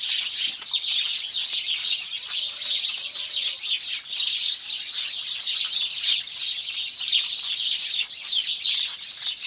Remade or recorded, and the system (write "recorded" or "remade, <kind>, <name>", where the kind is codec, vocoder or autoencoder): recorded